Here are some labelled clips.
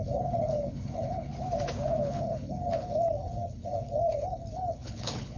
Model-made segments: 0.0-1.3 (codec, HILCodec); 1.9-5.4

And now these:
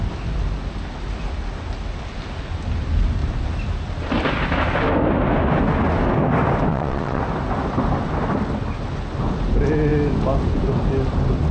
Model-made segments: 6.7-7.2 (vocoder, Vocos)

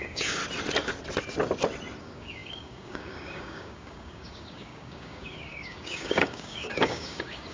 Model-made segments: 0.0-0.4 (codec, DAC); 2.0-7.5